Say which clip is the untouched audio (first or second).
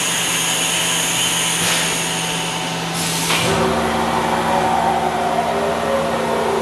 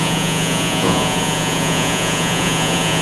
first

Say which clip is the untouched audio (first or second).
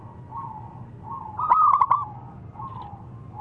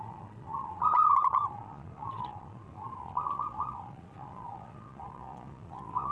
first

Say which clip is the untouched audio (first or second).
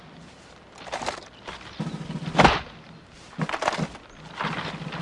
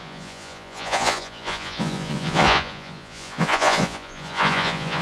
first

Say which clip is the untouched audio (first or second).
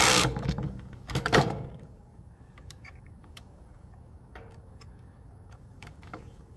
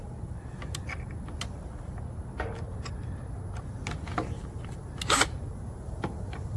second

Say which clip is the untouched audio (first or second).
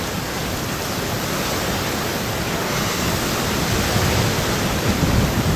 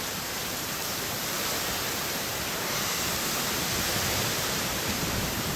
first